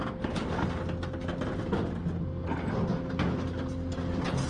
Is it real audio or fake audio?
real